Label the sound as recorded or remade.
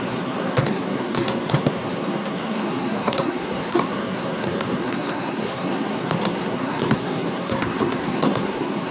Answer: remade